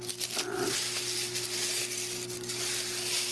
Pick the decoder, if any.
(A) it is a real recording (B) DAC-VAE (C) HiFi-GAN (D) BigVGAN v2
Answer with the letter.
A